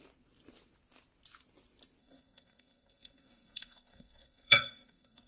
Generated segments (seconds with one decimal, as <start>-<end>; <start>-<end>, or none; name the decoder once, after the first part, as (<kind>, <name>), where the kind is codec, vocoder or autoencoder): 2.0-5.3 (codec, SNAC)